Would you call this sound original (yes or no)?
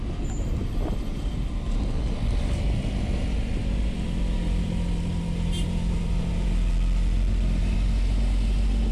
yes